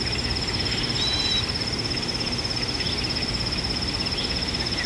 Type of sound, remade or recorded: recorded